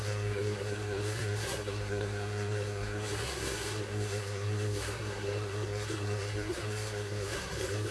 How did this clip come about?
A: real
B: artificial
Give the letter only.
B